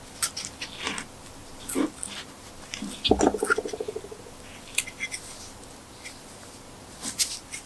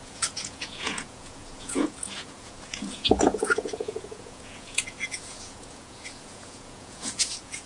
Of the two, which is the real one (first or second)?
first